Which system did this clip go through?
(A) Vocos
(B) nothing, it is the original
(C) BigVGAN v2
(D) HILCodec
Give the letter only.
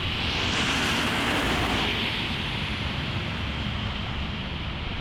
B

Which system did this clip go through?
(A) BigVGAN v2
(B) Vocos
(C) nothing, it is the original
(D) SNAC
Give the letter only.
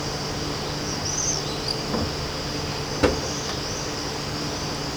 C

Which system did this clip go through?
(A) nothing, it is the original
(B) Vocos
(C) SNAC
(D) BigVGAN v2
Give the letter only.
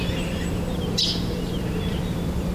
D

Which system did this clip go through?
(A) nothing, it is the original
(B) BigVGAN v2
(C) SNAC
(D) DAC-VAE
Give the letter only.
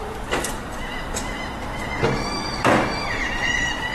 B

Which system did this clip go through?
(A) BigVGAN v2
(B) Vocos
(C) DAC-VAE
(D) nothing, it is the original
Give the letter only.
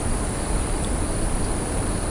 A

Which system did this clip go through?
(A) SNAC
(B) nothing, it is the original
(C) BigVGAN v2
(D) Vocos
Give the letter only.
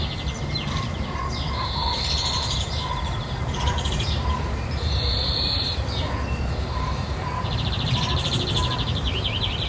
C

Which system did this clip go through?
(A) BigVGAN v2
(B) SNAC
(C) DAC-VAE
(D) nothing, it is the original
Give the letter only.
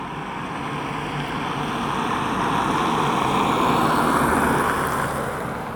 D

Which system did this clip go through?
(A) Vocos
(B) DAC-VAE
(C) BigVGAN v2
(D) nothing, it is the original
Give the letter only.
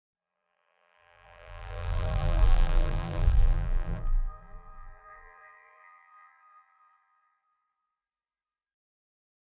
C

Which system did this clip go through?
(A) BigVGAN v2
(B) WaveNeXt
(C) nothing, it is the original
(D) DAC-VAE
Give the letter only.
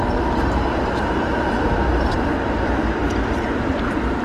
A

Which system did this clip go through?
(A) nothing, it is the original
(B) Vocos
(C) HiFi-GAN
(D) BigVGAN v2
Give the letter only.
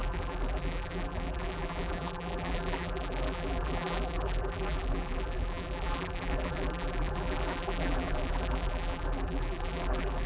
D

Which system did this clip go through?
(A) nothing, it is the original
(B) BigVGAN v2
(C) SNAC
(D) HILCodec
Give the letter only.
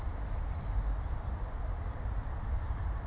A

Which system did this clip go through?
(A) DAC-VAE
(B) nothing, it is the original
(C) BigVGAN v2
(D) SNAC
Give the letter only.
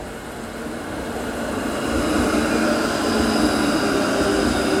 B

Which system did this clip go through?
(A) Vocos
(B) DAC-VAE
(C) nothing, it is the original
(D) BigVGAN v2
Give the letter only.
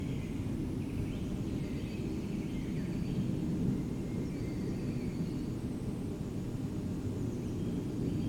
C